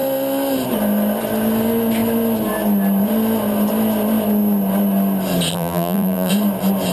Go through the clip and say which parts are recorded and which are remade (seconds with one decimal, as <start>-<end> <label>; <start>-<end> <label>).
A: 0.0-5.5 recorded; 5.5-6.3 remade; 6.3-6.9 recorded